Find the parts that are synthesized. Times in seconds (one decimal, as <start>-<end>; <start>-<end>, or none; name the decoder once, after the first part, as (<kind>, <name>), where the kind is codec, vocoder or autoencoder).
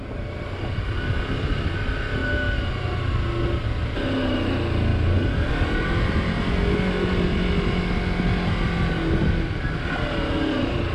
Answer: none